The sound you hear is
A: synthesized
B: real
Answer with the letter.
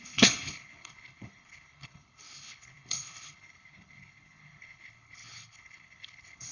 A